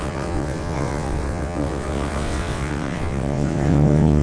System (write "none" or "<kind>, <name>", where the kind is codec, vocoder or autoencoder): vocoder, WaveNeXt